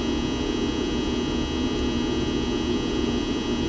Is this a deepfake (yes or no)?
no